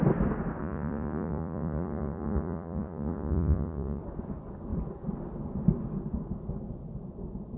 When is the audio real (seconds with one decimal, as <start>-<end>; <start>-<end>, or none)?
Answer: 0.0-0.6; 4.0-7.6